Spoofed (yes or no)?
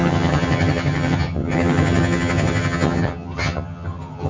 yes